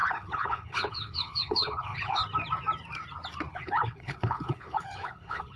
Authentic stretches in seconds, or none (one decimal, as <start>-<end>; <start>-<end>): 2.2-3.5